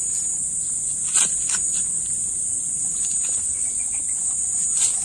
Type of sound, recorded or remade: recorded